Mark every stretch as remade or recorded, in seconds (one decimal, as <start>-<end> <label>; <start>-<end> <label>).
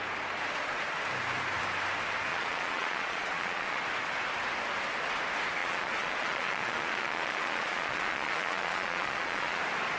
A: 0.0-2.3 recorded; 2.3-3.8 remade; 3.8-5.6 recorded; 5.6-9.6 remade; 9.6-10.0 recorded